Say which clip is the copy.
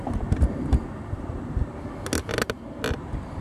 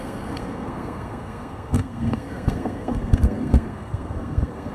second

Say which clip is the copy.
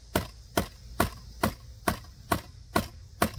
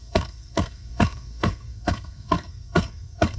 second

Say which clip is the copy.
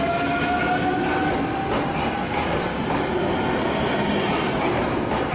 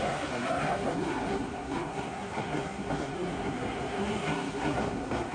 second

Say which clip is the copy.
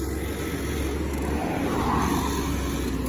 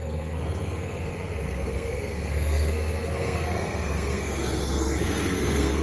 second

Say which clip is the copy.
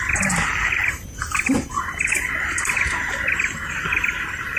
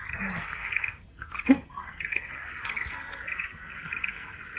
second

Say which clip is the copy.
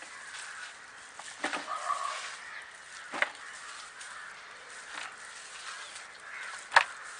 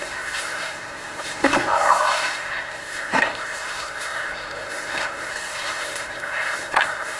second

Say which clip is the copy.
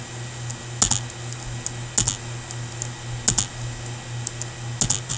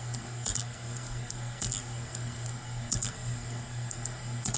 second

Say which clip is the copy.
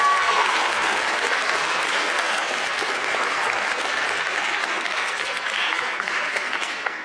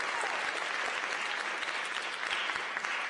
first